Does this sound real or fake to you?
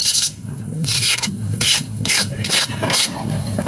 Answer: fake